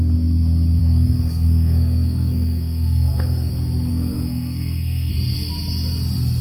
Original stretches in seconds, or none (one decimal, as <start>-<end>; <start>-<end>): 0.0-0.8; 3.5-3.9; 5.1-6.4